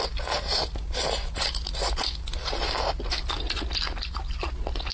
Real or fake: real